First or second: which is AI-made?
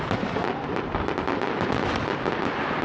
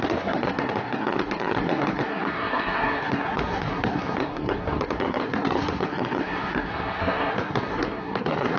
second